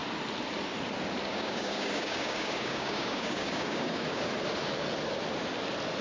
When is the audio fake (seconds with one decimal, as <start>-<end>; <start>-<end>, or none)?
1.3-4.2

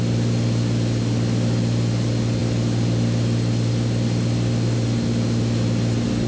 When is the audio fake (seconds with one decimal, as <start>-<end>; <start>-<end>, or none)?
none